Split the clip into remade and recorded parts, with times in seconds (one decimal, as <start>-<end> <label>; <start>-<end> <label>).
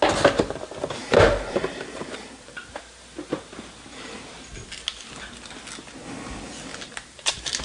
0.0-1.0 recorded; 1.0-2.8 remade; 2.8-6.7 recorded; 6.7-7.6 remade